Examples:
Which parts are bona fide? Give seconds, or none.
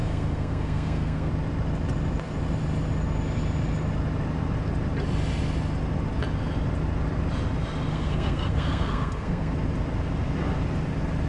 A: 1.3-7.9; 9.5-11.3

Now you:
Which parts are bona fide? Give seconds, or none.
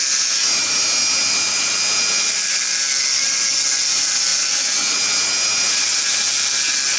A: 0.0-7.0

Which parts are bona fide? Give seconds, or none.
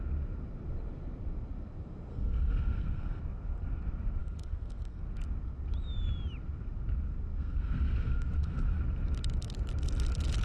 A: 0.0-2.1; 3.2-4.2; 5.0-7.4; 8.8-10.4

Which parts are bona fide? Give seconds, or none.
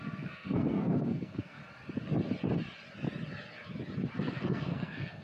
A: 1.6-4.1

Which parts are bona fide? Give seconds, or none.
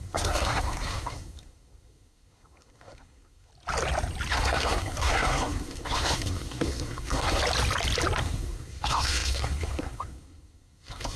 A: 3.5-4.3; 7.4-8.2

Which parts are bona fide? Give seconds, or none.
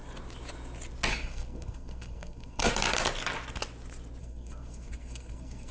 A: 0.0-1.1; 2.7-4.2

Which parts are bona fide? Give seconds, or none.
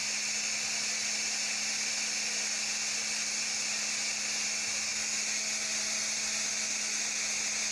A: 0.0-7.7